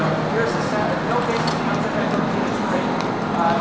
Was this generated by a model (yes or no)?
no